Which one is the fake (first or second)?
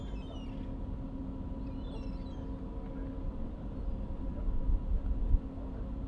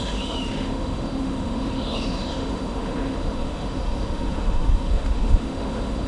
second